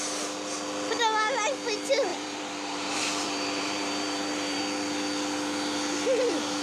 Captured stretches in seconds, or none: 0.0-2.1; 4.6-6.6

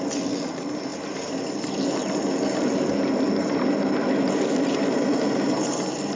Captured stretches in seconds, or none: 0.0-6.2